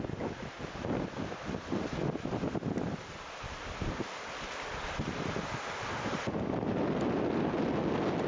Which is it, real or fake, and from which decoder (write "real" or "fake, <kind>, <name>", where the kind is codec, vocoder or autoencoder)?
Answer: real